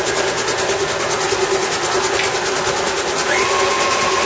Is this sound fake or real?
real